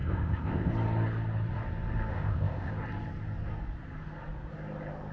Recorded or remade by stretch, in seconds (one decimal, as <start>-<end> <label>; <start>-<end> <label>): 0.0-0.7 remade; 0.7-2.1 recorded; 2.1-2.7 remade; 2.7-5.1 recorded